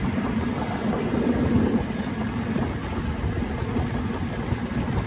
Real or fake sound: real